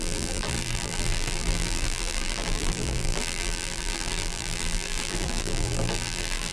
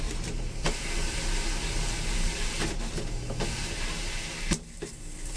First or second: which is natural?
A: second